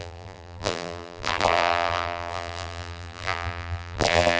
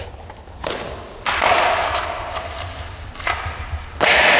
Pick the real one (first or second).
second